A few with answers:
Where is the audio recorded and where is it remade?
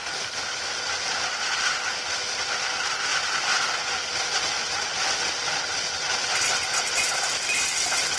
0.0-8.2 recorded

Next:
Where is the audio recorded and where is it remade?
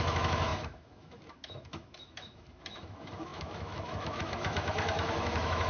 0.0-5.7 remade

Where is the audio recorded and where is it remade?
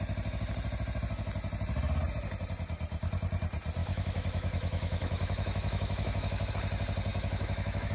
0.0-3.8 recorded; 3.8-6.5 remade; 6.5-7.1 recorded; 7.1-7.9 remade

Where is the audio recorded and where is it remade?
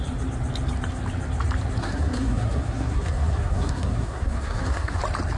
0.0-1.8 recorded; 1.8-5.0 remade; 5.0-5.4 recorded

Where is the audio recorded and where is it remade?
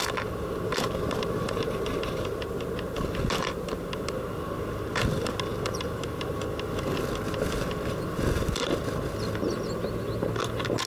0.0-0.7 recorded; 0.7-2.4 remade; 2.4-5.5 recorded; 5.5-6.4 remade; 6.4-10.9 recorded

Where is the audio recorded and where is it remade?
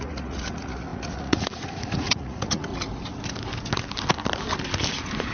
0.0-2.7 remade; 2.7-5.3 recorded